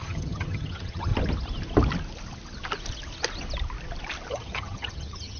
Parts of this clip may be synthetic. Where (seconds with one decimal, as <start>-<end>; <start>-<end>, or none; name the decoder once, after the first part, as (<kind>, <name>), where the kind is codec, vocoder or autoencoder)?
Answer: 0.0-1.1 (vocoder, HiFi-GAN); 4.3-5.4